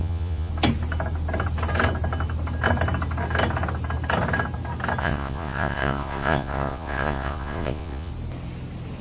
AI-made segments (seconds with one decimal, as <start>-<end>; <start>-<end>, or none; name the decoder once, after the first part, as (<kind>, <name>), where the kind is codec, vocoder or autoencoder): 0.0-0.5 (vocoder, Vocos); 5.0-8.1